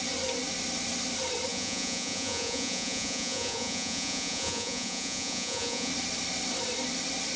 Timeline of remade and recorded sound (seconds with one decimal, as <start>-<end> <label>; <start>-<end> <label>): 0.0-1.5 recorded; 1.5-5.9 remade; 5.9-7.4 recorded